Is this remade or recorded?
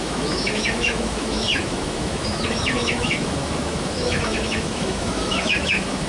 remade